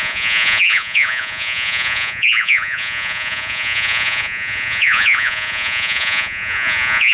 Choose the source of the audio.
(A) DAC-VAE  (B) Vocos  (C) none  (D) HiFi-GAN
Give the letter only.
B